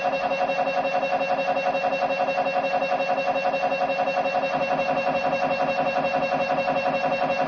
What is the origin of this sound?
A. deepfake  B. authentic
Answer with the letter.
B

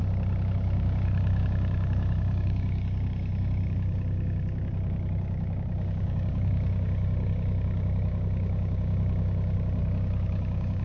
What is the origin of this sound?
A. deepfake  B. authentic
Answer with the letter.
A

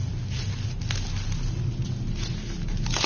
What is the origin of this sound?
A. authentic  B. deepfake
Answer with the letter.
A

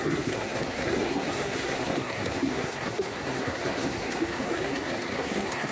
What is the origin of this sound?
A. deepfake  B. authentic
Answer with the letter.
A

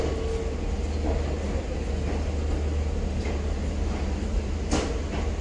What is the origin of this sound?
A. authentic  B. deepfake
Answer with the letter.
A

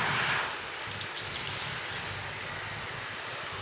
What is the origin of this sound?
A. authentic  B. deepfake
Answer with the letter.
A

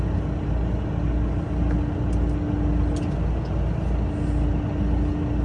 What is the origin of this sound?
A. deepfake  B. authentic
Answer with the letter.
B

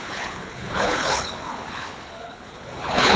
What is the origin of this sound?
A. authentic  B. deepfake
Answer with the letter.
B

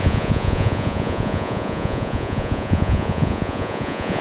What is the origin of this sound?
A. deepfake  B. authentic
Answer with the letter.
A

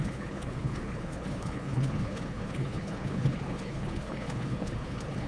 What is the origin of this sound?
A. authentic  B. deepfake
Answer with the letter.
B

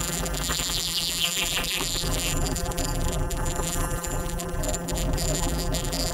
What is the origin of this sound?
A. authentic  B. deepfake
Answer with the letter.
B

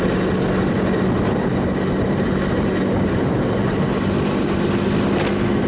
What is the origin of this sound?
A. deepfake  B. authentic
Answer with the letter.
B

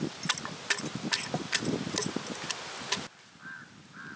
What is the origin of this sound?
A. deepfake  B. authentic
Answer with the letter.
B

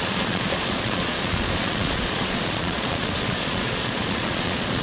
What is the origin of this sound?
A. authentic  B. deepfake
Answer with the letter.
B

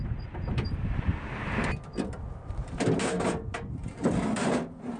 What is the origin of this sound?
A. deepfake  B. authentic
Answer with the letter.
B